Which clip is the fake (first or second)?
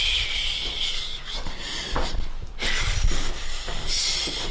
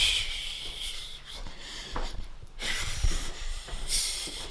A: second